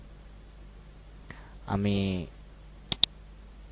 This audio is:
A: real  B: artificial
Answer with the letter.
A